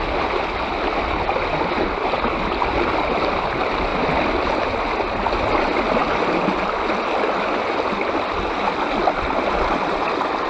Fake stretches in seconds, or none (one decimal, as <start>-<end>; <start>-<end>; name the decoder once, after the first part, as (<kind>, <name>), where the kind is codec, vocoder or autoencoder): none